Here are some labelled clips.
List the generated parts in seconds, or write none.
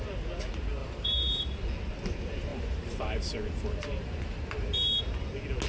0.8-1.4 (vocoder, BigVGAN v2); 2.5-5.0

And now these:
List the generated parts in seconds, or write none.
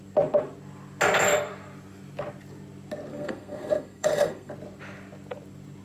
3.1-4.5 (codec, SNAC)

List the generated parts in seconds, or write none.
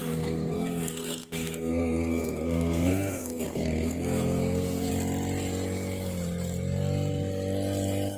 0.0-4.9 (codec, SNAC)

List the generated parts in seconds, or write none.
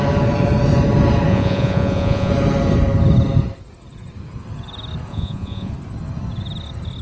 1.3-2.3 (vocoder, Vocos); 5.1-5.7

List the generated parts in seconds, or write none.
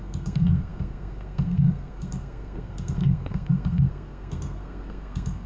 0.0-5.5 (codec, SNAC)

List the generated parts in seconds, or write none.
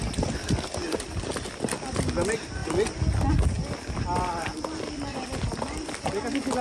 none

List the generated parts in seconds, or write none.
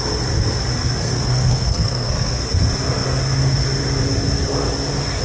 1.0-2.4 (codec, SNAC)